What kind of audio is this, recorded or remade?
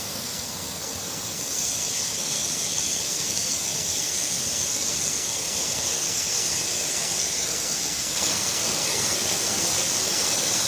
remade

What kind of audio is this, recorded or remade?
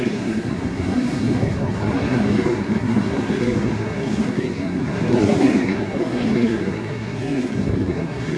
remade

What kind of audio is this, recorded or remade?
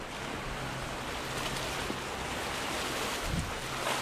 recorded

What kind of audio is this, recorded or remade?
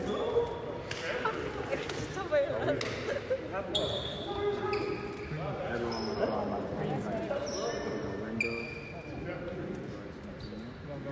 recorded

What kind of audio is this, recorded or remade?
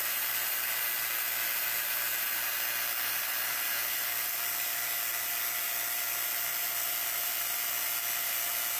recorded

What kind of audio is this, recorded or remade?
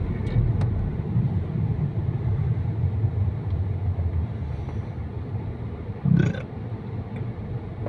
recorded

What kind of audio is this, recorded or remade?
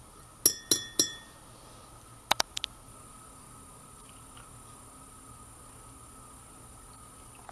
recorded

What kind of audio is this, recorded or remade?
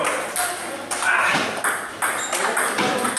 recorded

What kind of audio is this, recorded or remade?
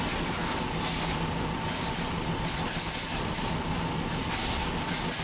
recorded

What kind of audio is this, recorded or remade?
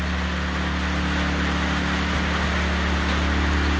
recorded